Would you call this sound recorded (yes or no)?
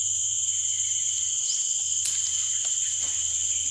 yes